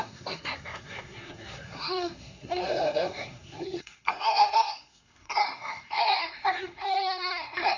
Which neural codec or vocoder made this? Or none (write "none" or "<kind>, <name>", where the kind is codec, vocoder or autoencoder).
codec, SNAC